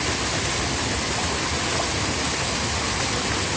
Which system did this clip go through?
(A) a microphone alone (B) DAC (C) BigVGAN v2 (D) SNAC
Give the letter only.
A